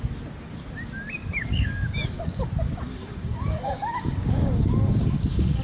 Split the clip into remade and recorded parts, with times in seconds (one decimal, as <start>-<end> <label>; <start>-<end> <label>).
0.0-1.4 recorded; 1.4-2.5 remade; 2.5-2.9 recorded; 2.9-5.6 remade